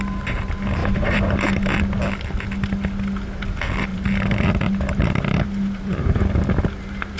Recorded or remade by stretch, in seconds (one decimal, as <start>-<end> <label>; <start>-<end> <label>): 0.0-0.8 recorded; 0.8-1.8 remade; 1.8-3.9 recorded; 3.9-6.2 remade; 6.2-7.2 recorded